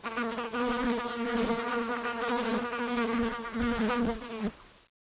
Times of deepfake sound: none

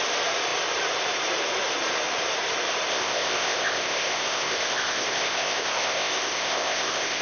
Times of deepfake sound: 2.9-7.2 (codec, ZipCodec)

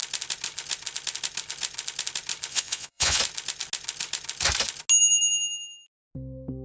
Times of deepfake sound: 2.5-3.2 (vocoder, Vocos)